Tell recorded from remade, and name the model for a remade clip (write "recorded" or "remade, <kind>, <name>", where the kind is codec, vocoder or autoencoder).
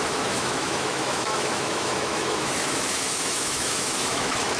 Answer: remade, autoencoder, DAC-VAE